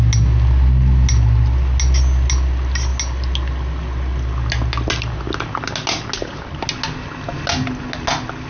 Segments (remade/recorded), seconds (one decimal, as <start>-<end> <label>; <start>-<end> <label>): 0.0-8.5 recorded